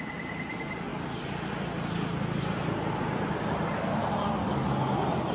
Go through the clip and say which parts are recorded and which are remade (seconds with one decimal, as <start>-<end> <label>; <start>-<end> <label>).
0.0-5.3 recorded

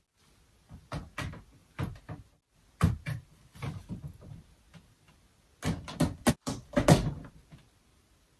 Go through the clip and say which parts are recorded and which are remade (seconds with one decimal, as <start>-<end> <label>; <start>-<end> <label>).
0.0-8.4 recorded

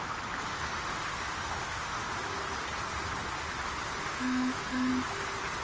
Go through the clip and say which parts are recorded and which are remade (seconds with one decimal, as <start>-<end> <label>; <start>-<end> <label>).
0.0-0.5 recorded; 0.5-2.1 remade; 2.1-4.0 recorded; 4.0-4.9 remade; 4.9-5.6 recorded

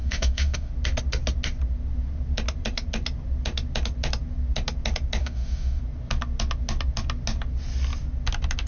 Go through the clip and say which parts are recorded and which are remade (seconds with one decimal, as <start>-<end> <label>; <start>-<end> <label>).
0.0-0.7 remade; 0.7-5.2 recorded; 5.2-5.8 remade; 5.8-8.7 recorded

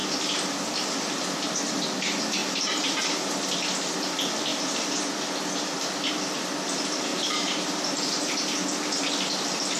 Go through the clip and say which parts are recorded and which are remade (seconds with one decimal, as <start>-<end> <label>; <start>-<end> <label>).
0.0-2.4 recorded; 2.4-3.4 remade; 3.4-4.5 recorded; 4.5-5.0 remade; 5.0-7.1 recorded; 7.1-8.3 remade; 8.3-9.8 recorded

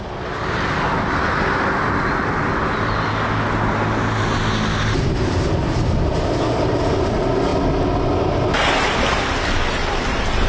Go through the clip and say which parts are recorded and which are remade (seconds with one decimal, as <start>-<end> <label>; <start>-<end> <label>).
0.0-10.5 recorded

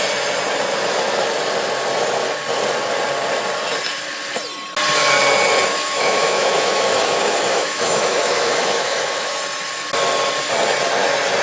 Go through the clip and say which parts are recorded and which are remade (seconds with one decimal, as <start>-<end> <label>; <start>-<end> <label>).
0.0-5.7 recorded; 5.7-9.4 remade; 9.4-11.4 recorded